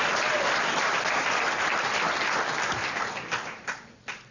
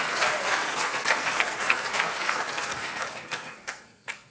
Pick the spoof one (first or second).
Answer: second